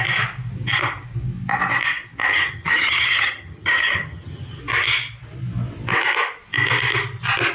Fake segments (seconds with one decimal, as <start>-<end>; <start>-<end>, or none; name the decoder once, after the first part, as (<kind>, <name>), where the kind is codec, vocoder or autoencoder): 2.3-4.6 (vocoder, HiFi-GAN)

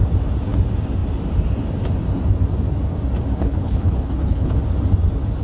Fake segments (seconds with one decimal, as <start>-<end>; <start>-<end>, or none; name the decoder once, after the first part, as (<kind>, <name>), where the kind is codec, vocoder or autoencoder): 3.4-4.6 (codec, HILCodec)

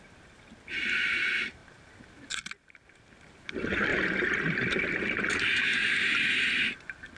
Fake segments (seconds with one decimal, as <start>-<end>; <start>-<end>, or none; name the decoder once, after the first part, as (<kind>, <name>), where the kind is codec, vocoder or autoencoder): 0.0-1.6 (vocoder, BigVGAN v2); 3.4-3.9; 5.3-5.7

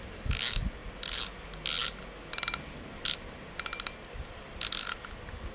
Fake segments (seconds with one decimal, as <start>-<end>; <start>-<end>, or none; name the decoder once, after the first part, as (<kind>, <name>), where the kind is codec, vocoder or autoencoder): none

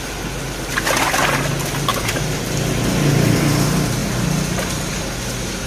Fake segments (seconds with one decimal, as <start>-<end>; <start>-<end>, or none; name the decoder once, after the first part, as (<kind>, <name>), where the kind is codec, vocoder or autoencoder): 1.9-2.4 (vocoder, BigVGAN v2)

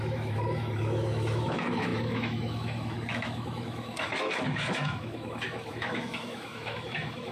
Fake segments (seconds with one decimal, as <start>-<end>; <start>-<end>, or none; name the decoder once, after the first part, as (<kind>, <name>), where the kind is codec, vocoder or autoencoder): 0.0-7.3 (autoencoder, DAC-VAE)

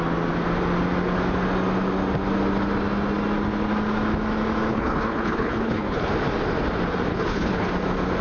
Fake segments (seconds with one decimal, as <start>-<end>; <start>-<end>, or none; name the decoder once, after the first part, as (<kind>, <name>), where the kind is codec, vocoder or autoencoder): 4.7-6.1 (codec, HILCodec); 7.1-7.7

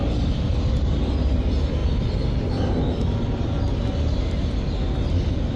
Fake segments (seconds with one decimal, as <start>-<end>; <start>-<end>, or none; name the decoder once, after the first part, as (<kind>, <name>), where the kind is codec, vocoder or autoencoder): none